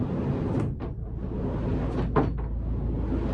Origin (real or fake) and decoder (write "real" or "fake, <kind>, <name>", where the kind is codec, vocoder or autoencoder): real